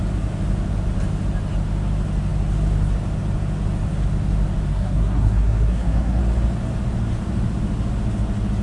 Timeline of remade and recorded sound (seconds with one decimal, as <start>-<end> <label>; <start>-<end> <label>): 0.0-4.7 recorded; 4.7-6.2 remade; 6.2-8.6 recorded